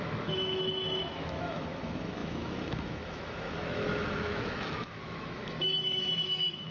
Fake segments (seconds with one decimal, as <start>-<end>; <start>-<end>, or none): 0.0-6.7